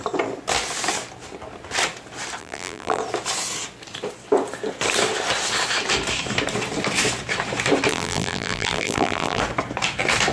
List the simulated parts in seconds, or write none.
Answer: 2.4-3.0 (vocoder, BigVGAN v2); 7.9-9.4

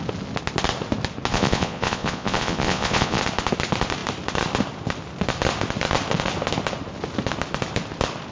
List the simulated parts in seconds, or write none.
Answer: 1.3-3.2 (vocoder, Vocos)

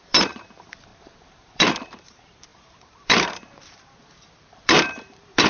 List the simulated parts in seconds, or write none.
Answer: 0.0-5.5 (vocoder, BigVGAN v2)

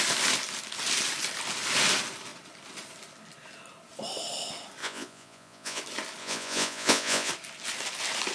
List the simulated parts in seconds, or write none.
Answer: 4.8-5.8 (vocoder, Vocos); 6.2-7.3

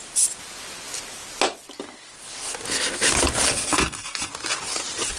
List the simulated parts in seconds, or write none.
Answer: 3.5-4.3 (codec, SNAC)

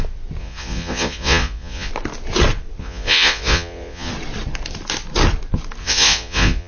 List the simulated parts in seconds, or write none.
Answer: 0.4-1.9 (vocoder, Vocos); 2.8-4.1; 5.8-6.7

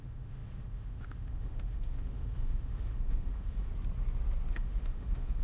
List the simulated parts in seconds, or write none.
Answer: 0.0-3.7 (autoencoder, DAC-VAE); 4.5-5.4